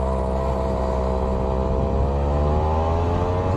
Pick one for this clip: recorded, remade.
recorded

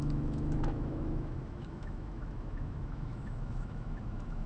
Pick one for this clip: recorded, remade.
remade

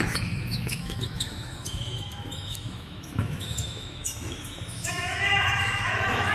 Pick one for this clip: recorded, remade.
remade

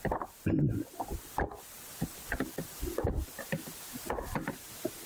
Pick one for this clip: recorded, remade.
recorded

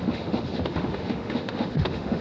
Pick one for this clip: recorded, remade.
remade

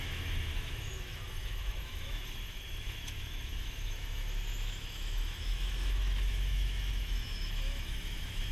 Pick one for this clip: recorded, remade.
remade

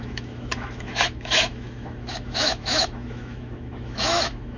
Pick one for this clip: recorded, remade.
remade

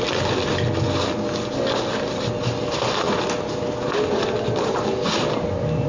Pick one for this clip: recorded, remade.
recorded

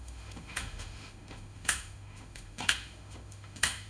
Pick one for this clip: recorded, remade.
remade